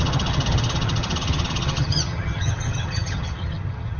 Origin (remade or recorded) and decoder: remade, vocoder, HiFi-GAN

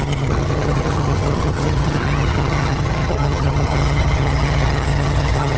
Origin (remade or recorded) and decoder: remade, vocoder, HiFi-GAN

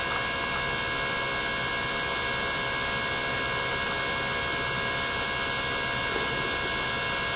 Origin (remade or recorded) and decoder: recorded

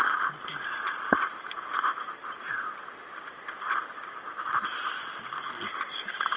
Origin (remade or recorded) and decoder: recorded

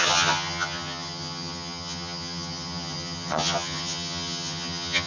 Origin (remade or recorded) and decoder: remade, vocoder, HiFi-GAN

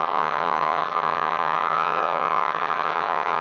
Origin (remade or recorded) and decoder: remade, vocoder, HiFi-GAN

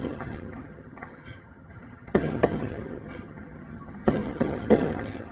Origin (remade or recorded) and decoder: remade, vocoder, HiFi-GAN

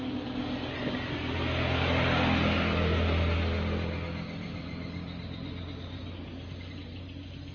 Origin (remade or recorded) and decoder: recorded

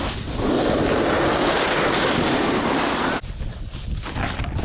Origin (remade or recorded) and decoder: recorded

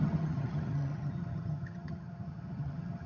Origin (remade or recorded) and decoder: remade, vocoder, HiFi-GAN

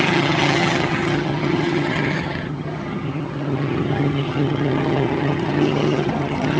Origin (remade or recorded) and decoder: remade, vocoder, HiFi-GAN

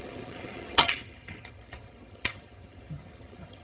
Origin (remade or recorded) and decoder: remade, vocoder, HiFi-GAN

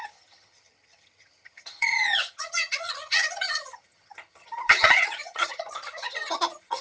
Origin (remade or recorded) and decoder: remade, vocoder, HiFi-GAN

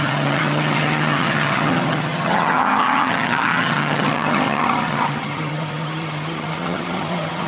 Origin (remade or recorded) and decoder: remade, vocoder, HiFi-GAN